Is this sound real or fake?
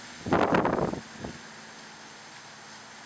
real